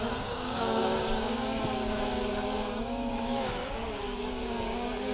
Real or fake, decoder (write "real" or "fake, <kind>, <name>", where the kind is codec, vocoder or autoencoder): fake, codec, DAC